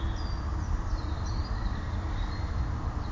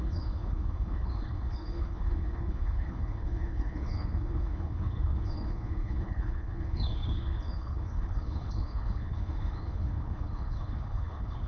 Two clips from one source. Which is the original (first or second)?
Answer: first